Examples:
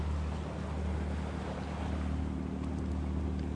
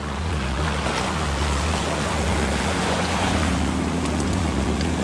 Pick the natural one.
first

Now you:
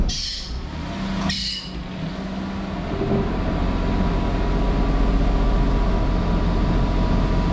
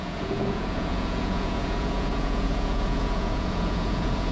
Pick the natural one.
first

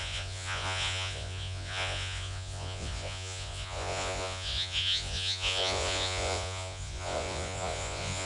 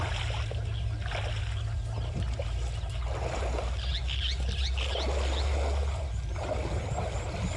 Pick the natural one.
second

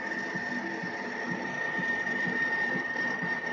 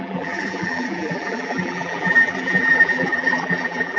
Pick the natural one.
first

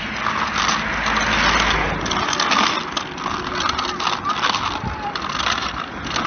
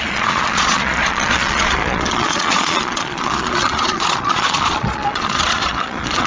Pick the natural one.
first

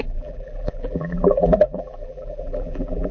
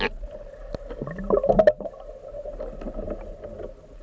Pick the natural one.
second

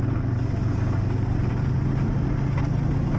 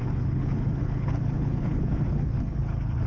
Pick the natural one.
first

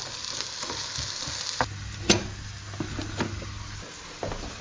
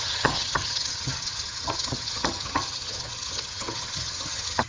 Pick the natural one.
first